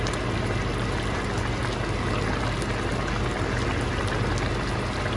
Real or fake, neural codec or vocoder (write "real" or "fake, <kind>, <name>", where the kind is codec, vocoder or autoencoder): real